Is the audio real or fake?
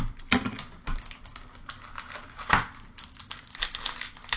real